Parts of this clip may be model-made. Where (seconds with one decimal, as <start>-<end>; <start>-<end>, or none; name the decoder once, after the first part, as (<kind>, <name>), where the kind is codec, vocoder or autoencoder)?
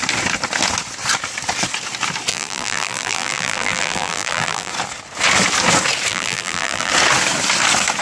2.3-4.7 (vocoder, BigVGAN v2); 6.1-6.9